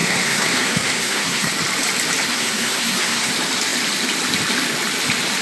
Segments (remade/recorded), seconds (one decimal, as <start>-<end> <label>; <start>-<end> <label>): 0.0-1.5 remade; 1.5-2.3 recorded; 2.3-3.3 remade; 3.3-5.4 recorded

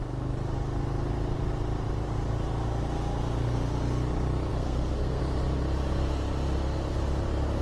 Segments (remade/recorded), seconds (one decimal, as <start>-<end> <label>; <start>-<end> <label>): 0.0-4.5 recorded; 4.5-5.2 remade; 5.2-7.6 recorded

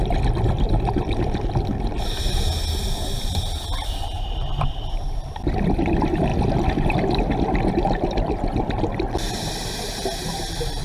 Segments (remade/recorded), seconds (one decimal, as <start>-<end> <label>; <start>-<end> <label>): 0.0-10.8 recorded

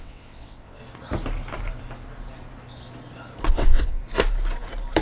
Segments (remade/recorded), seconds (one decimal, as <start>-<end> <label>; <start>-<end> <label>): 0.0-0.8 remade; 0.8-3.5 recorded; 3.5-4.0 remade; 4.0-5.0 recorded

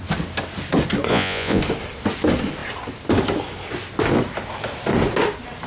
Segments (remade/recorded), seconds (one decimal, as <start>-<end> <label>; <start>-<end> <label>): 0.0-1.1 recorded; 1.1-1.6 remade; 1.6-5.7 recorded

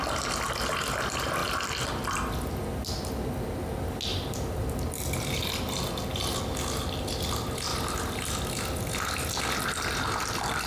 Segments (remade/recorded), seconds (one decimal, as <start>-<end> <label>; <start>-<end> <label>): 0.0-4.1 recorded; 4.1-5.4 remade; 5.4-7.7 recorded; 7.7-8.3 remade; 8.3-10.7 recorded

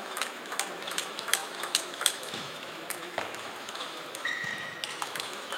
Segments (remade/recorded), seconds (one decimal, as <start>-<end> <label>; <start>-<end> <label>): 0.0-4.5 remade; 4.5-5.0 recorded; 5.0-5.6 remade

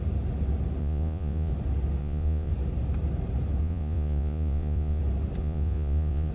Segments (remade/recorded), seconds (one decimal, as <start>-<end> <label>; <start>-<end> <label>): 0.0-0.8 recorded; 0.8-1.5 remade; 1.5-2.0 recorded; 2.0-2.5 remade; 2.5-3.6 recorded; 3.6-5.0 remade; 5.0-5.4 recorded; 5.4-6.3 remade